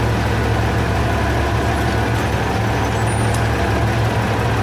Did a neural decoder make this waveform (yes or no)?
no